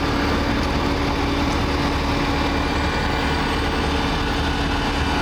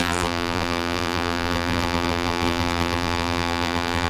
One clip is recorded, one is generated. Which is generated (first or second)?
second